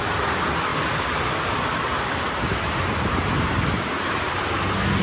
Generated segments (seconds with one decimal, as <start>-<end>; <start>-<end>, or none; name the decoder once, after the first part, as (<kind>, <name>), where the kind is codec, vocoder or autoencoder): none